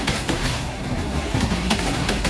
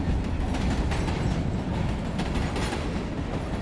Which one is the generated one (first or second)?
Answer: first